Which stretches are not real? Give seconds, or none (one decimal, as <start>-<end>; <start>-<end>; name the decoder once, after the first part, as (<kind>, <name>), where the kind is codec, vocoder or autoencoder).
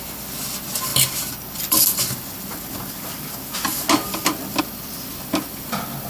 none